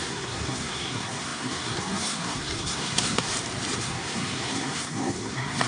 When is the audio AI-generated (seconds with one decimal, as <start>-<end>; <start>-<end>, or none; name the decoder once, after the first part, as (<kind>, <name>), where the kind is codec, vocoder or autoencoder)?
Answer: 0.0-3.3 (codec, SNAC); 3.8-5.7